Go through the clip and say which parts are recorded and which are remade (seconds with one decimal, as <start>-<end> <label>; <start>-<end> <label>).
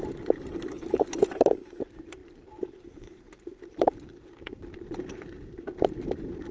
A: 0.0-6.5 remade